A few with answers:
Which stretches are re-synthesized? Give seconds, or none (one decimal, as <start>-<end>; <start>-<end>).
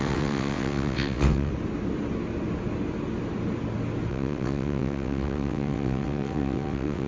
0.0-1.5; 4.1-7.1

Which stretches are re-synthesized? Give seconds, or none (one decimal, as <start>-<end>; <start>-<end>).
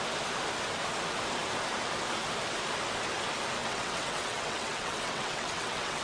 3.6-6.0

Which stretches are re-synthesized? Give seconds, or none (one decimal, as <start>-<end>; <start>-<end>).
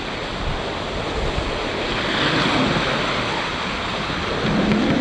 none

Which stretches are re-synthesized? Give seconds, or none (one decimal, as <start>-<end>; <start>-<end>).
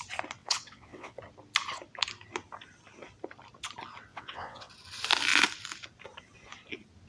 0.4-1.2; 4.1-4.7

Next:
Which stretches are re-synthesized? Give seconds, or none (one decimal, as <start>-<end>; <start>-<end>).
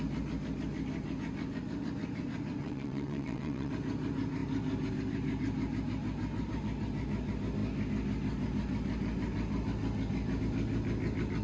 2.6-3.7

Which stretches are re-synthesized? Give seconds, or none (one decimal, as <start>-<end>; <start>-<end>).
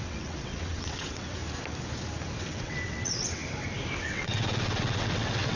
0.0-1.4; 2.4-3.4; 4.0-5.6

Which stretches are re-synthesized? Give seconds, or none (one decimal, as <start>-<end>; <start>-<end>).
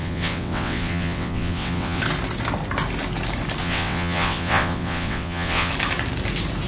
0.0-2.0; 3.6-5.7